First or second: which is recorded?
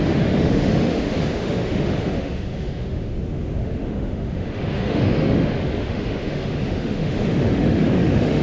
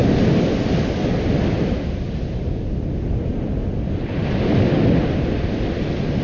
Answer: second